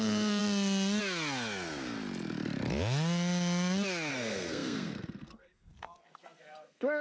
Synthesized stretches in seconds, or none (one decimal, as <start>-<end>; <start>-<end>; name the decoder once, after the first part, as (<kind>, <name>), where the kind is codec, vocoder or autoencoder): 0.0-0.4 (codec, SNAC); 4.1-7.0